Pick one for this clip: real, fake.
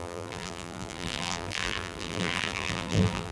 fake